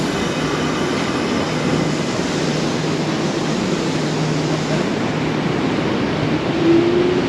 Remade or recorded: recorded